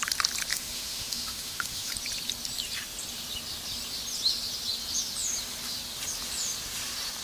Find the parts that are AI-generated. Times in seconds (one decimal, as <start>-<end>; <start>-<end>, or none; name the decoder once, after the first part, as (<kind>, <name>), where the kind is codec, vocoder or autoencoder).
0.5-1.9 (autoencoder, DAC-VAE)